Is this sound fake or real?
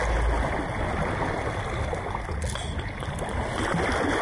real